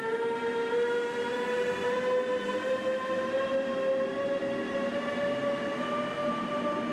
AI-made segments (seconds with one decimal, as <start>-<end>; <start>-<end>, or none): none